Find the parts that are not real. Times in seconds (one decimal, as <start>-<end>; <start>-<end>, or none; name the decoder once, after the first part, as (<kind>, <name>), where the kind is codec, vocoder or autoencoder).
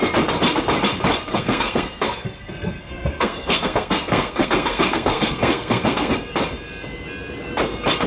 1.3-6.1 (codec, SNAC)